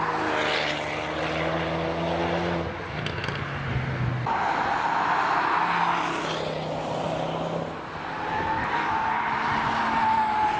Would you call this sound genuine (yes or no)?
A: yes